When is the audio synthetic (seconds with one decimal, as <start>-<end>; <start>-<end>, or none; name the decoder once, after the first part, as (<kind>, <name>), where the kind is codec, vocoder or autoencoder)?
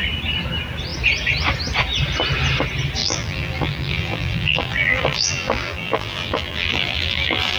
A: 3.0-7.6 (vocoder, BigVGAN v2)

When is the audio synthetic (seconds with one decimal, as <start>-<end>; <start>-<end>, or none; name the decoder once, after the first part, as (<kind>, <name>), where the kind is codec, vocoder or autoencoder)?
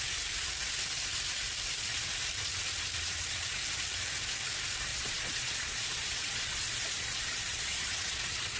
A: 4.9-8.6 (vocoder, Vocos)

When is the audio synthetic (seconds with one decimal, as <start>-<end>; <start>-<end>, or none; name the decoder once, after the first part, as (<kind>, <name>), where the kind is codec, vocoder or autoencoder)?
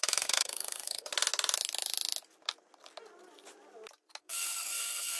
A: 0.0-1.1 (codec, SNAC); 4.2-5.2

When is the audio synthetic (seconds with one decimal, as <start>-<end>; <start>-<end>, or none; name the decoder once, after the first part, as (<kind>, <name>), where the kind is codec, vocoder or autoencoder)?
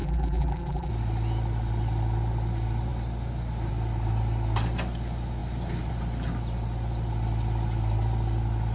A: 0.0-0.9 (vocoder, BigVGAN v2)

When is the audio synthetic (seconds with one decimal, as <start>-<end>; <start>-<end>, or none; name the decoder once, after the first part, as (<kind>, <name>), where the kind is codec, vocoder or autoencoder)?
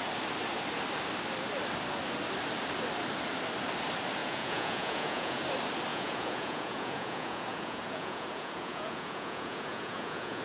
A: 4.2-5.4 (vocoder, Vocos); 5.9-10.4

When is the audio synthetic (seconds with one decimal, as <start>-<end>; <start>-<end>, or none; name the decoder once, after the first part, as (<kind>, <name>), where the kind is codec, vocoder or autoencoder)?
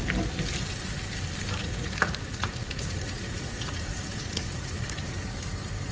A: 1.6-5.1 (vocoder, Vocos)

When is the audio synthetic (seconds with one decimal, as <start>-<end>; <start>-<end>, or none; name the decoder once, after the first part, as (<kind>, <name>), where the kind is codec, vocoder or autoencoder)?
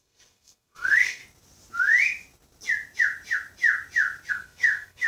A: 0.0-1.2 (codec, SNAC); 4.3-5.1